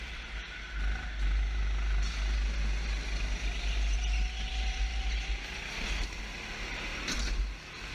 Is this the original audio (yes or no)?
yes